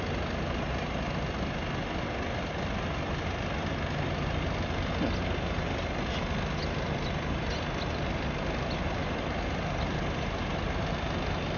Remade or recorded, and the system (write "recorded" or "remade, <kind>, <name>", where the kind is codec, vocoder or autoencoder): recorded